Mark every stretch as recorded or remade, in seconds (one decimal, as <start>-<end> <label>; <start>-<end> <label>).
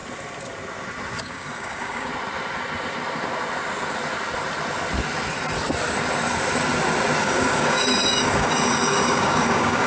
0.0-1.2 recorded; 1.2-2.1 remade; 2.1-7.2 recorded; 7.2-9.9 remade